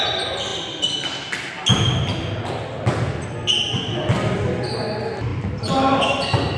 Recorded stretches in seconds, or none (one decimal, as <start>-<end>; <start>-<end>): 0.0-6.6

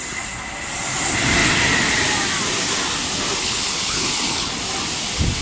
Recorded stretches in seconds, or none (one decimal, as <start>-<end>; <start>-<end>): 0.0-3.4; 4.5-5.4

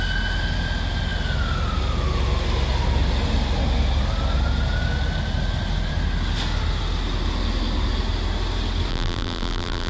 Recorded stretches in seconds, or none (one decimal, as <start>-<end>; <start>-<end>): 0.0-8.9

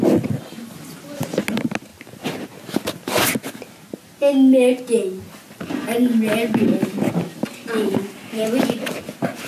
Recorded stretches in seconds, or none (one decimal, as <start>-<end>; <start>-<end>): 0.0-9.5

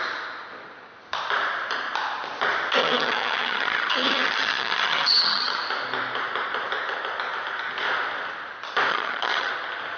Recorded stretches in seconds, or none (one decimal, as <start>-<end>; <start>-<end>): 0.0-2.8; 5.6-8.9; 9.5-10.0

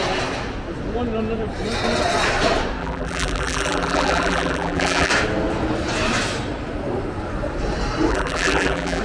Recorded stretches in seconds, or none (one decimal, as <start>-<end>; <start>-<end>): 0.0-2.8; 5.1-8.1

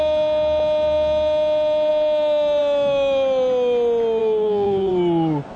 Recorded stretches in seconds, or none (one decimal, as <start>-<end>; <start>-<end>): 0.0-4.2; 4.9-5.6